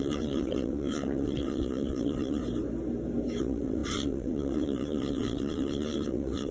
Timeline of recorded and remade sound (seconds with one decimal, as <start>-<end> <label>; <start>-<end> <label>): 0.0-2.4 remade; 2.4-3.4 recorded; 3.4-6.5 remade